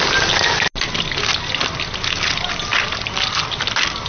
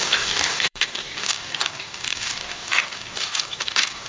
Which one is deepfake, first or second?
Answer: second